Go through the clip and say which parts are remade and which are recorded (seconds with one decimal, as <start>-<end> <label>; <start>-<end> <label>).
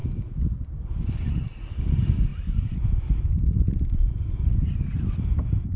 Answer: 0.0-5.8 recorded